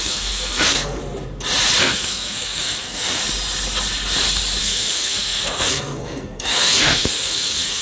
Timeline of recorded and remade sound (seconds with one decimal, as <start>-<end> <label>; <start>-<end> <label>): 0.0-1.0 remade; 1.0-1.8 recorded; 1.8-3.2 remade; 3.2-4.6 recorded; 4.6-7.8 remade